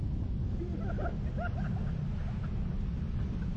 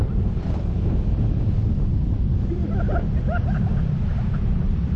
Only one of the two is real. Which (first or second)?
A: first